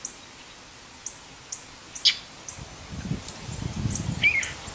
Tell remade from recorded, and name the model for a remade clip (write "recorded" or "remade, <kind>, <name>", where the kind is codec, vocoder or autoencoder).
recorded